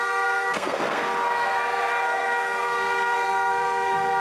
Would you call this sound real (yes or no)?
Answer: no